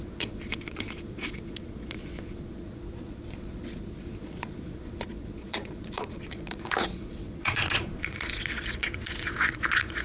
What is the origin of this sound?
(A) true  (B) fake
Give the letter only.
B